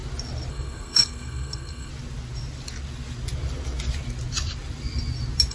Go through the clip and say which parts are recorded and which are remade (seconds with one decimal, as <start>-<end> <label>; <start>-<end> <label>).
0.0-0.5 recorded; 0.5-1.9 remade; 1.9-5.5 recorded